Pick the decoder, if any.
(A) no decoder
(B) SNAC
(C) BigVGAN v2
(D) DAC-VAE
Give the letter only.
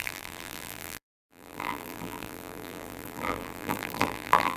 C